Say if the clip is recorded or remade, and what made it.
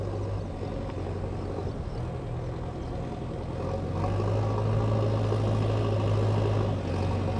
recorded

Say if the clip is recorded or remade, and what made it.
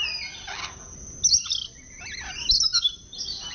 recorded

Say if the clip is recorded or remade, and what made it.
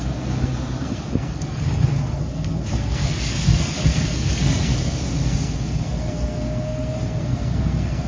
remade, codec, SNAC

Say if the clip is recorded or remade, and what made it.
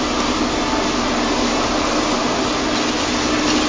recorded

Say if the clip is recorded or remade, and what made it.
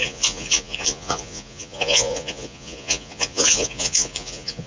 remade, vocoder, Vocos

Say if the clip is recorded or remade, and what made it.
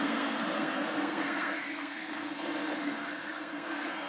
remade, codec, SNAC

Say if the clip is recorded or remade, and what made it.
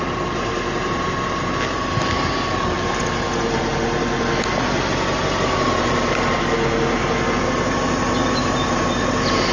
recorded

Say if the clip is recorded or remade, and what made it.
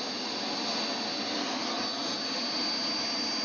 recorded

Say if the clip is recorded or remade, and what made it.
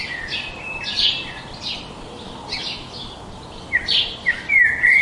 recorded